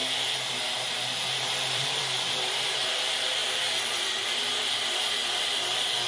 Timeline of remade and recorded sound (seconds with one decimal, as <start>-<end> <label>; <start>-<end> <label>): 0.0-3.4 remade; 3.4-4.4 recorded; 4.4-5.2 remade; 5.2-6.1 recorded